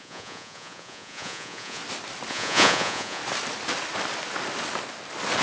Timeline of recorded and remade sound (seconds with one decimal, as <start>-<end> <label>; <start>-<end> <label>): 0.0-1.8 remade; 1.8-2.3 recorded; 2.3-3.2 remade; 3.2-5.4 recorded